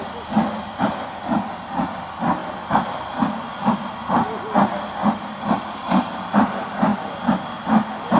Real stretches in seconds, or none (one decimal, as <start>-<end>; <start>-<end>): 0.0-8.2